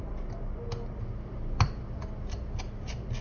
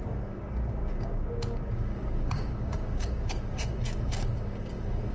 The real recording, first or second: first